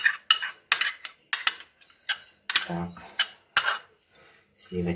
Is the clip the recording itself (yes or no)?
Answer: yes